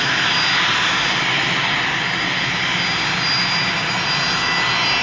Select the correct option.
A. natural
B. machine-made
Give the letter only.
A